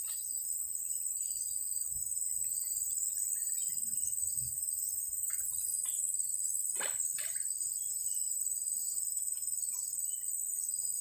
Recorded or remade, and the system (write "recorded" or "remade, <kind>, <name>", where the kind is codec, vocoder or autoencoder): recorded